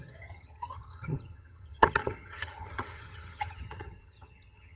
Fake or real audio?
fake